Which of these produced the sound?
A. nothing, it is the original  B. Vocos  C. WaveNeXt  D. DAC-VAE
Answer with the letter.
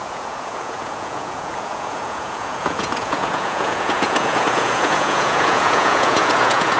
B